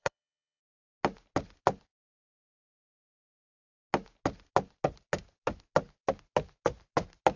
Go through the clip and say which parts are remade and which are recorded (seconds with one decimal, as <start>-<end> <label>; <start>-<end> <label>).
0.0-0.6 remade; 0.6-7.4 recorded